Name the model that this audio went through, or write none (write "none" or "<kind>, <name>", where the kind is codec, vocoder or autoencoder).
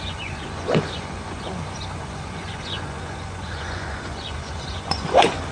vocoder, Vocos